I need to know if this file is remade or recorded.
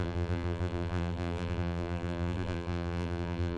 remade